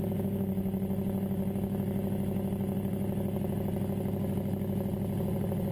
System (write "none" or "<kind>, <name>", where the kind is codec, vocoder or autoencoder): none